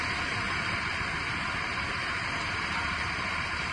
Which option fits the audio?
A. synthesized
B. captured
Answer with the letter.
A